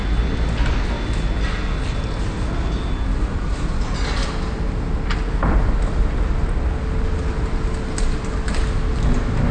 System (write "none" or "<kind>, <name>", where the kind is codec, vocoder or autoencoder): none